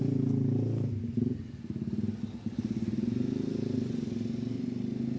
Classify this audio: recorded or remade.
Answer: recorded